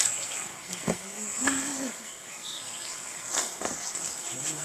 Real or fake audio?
fake